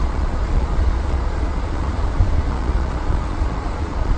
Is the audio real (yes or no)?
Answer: no